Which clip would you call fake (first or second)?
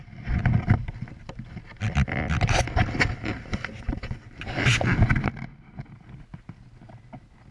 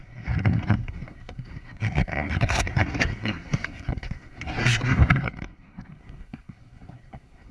second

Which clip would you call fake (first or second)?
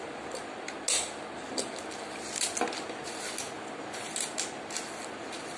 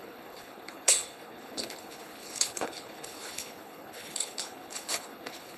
second